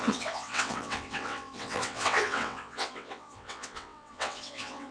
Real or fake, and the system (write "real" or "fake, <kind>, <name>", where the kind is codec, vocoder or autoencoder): fake, vocoder, WaveNeXt